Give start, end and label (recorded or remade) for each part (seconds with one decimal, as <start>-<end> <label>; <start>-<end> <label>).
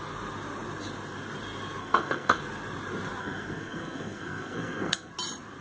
0.0-1.8 recorded; 1.8-2.4 remade; 2.4-3.2 recorded; 3.2-5.1 remade; 5.1-5.6 recorded